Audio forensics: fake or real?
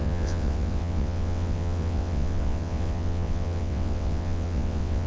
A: fake